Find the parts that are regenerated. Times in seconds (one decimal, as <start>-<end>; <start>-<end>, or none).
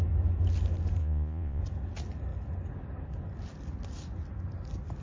1.0-1.6